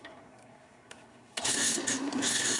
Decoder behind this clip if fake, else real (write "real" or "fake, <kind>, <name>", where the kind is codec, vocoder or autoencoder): fake, codec, SNAC